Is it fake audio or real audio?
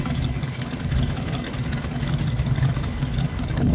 fake